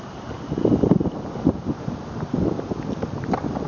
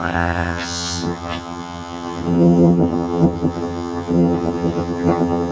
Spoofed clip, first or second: second